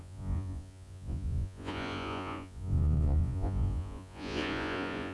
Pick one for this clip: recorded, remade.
remade